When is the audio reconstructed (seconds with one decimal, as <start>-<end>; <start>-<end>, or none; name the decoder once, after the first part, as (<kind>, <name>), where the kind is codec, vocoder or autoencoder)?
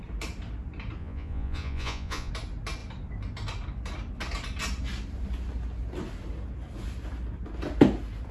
1.0-2.3 (vocoder, Vocos)